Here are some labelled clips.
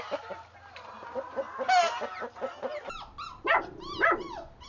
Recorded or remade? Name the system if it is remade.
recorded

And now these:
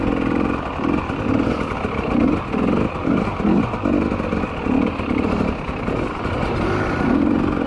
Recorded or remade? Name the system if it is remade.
recorded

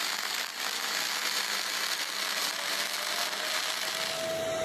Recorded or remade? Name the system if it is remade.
recorded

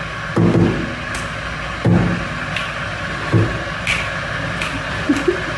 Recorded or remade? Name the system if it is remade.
recorded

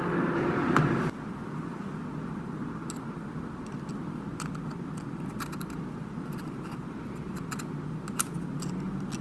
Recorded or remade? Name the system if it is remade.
recorded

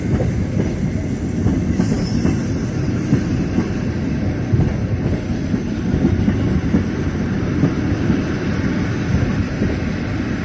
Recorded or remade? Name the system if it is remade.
recorded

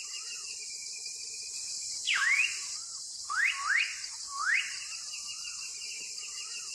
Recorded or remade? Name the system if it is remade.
recorded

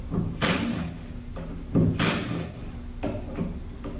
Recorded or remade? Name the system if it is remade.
recorded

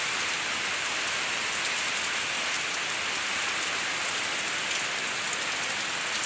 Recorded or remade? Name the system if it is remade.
recorded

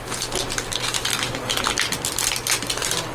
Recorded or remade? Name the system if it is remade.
recorded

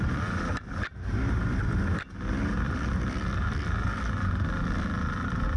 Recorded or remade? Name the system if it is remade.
recorded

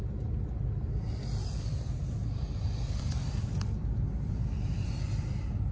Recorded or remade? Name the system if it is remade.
remade, vocoder, BigVGAN v2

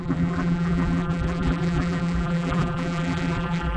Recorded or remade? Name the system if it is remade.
remade, vocoder, BigVGAN v2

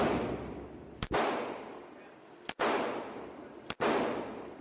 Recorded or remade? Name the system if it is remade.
recorded